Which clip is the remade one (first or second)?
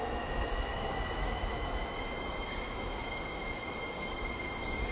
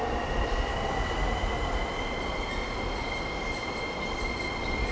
first